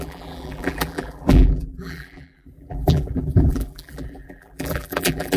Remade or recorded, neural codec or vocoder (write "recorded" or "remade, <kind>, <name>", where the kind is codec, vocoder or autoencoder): remade, vocoder, BigVGAN v2